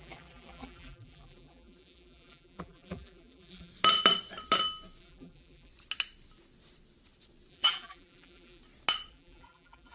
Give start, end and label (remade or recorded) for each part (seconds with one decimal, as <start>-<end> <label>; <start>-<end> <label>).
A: 0.0-3.7 remade; 3.7-5.0 recorded; 5.0-5.7 remade; 5.7-7.5 recorded; 7.5-8.6 remade; 8.6-9.1 recorded; 9.1-9.9 remade